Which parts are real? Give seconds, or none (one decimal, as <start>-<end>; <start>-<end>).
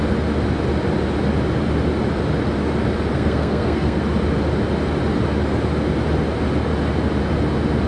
0.0-3.1; 4.0-7.9